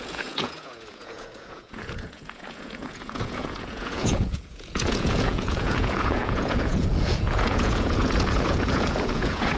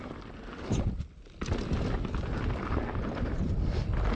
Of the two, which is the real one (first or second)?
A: second